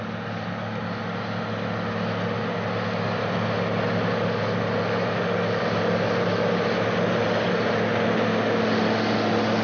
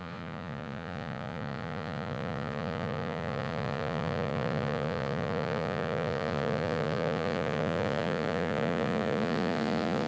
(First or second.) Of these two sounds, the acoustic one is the first